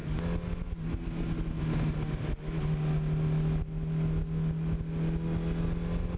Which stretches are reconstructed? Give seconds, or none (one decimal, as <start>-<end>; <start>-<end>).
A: none

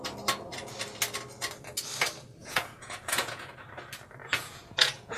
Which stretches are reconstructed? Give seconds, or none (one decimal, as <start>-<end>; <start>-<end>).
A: 2.4-3.5; 4.2-5.2